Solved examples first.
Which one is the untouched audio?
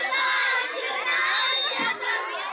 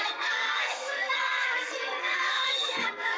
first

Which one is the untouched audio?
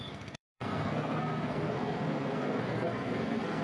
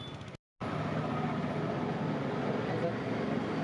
second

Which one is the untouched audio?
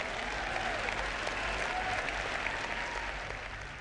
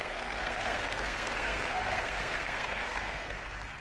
first